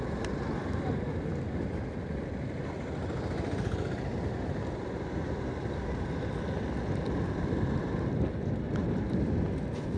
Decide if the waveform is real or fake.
real